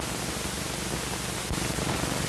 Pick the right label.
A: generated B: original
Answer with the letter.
B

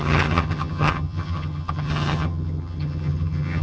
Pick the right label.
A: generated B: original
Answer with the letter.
A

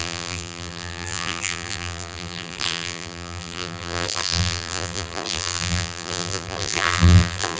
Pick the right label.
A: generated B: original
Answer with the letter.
A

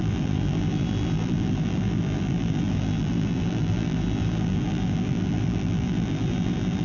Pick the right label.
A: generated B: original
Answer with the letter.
A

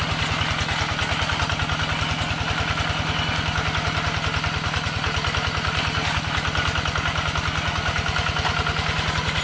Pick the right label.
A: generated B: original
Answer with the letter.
B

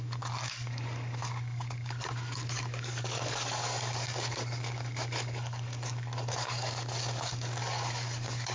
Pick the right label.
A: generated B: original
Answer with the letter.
A